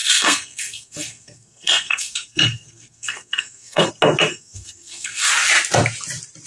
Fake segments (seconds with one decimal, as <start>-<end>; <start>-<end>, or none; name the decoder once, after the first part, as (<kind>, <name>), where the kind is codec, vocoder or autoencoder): 0.0-3.9 (codec, SNAC); 4.3-5.3

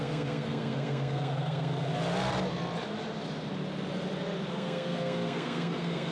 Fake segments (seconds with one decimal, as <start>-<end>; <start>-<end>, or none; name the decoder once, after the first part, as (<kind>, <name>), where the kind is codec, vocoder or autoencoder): 0.0-1.9 (codec, SNAC); 4.5-6.1

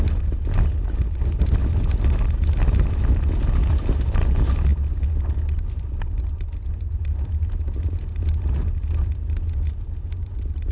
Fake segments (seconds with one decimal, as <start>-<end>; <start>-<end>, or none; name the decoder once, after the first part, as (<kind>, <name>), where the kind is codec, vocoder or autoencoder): none

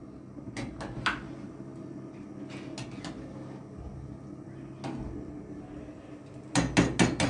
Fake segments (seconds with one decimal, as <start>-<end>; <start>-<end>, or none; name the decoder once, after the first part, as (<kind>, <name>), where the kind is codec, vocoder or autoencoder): none

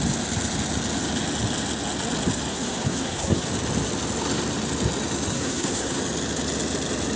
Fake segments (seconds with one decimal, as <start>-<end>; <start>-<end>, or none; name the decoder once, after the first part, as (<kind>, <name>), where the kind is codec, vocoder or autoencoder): 2.5-3.5 (codec, SNAC); 5.3-6.0

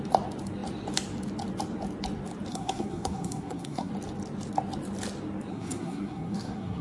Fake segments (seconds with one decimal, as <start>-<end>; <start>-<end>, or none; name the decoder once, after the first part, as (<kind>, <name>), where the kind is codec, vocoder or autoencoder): 2.5-3.9 (codec, SNAC); 5.5-6.8

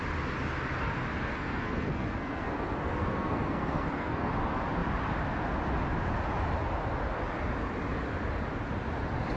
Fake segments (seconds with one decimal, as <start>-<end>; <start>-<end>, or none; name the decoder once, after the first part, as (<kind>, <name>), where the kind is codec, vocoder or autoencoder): 1.1-4.3 (codec, SNAC)